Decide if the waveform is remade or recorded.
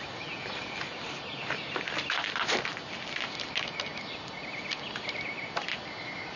recorded